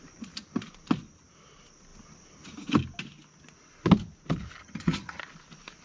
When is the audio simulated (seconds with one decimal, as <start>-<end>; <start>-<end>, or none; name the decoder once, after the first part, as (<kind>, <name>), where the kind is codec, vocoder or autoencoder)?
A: 4.6-5.2 (vocoder, HiFi-GAN)